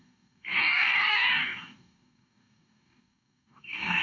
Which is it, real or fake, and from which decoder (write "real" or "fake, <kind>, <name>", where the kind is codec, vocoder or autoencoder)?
fake, codec, DAC